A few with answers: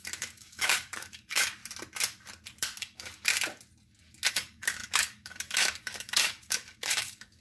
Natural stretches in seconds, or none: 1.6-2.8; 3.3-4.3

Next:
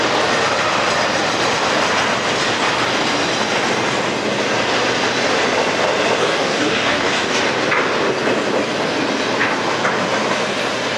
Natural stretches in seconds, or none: 0.0-6.2; 7.4-11.0

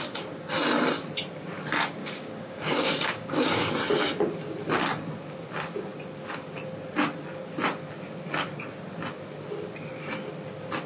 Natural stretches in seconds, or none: 0.0-2.0; 3.6-10.9